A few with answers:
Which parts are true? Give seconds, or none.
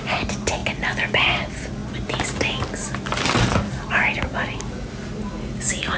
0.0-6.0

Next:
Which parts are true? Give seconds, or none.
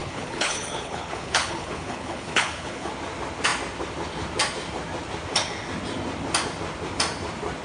2.9-7.6